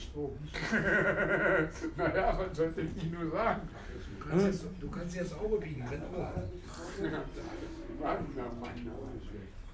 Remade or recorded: recorded